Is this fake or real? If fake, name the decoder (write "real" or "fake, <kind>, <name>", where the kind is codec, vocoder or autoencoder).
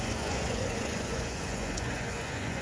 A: fake, vocoder, Vocos